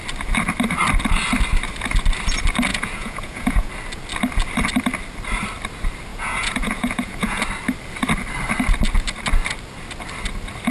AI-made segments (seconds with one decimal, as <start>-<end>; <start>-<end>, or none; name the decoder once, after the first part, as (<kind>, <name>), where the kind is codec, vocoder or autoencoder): 2.7-3.7 (vocoder, Vocos); 6.1-7.4